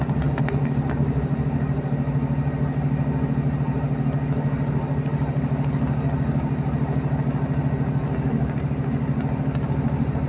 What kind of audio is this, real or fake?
real